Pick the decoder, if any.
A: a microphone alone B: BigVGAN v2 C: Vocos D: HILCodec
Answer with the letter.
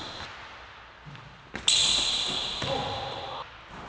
A